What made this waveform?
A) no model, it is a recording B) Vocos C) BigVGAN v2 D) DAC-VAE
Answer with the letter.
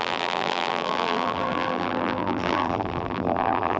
C